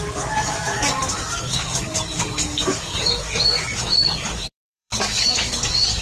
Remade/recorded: remade